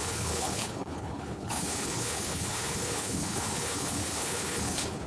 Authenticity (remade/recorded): remade